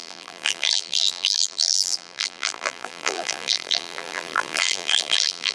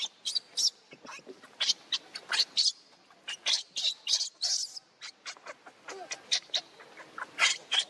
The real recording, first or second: second